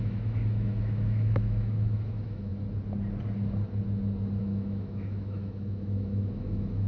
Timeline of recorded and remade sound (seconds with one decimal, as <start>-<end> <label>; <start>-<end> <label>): 0.0-2.5 remade; 2.5-4.4 recorded; 4.4-6.9 remade